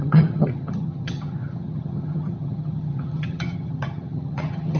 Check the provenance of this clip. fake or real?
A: fake